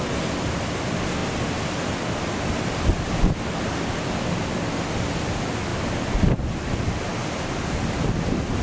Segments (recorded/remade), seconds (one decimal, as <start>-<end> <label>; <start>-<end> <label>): 0.0-8.6 recorded